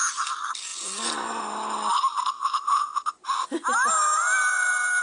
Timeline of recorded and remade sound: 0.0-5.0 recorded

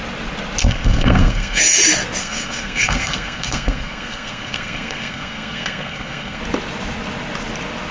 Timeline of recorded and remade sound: 0.0-0.6 recorded; 0.6-1.6 remade; 1.6-2.2 recorded; 2.2-6.4 remade; 6.4-7.9 recorded

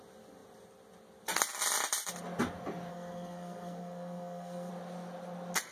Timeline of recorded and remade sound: 0.0-2.9 recorded; 2.9-4.7 remade; 4.7-5.7 recorded

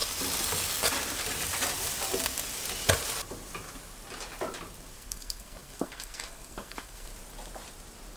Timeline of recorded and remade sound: 0.0-4.9 recorded; 4.9-7.1 remade; 7.1-8.2 recorded

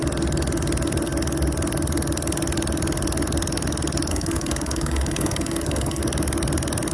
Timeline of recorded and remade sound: 0.0-4.1 recorded; 4.1-6.0 remade; 6.0-6.9 recorded